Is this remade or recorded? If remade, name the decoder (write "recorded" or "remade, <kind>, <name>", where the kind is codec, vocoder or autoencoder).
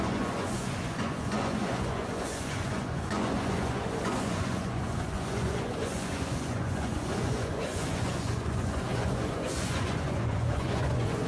remade, vocoder, Vocos